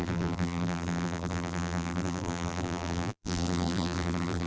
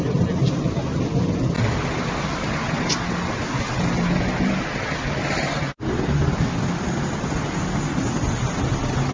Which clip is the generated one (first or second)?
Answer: first